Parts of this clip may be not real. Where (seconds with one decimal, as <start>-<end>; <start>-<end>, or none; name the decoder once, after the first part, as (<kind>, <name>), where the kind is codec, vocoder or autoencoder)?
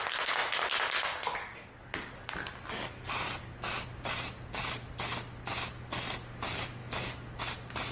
none